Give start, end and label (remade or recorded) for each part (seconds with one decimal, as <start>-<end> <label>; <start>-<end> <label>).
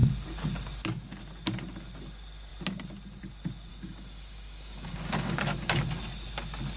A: 0.0-3.7 recorded; 3.7-5.4 remade; 5.4-6.8 recorded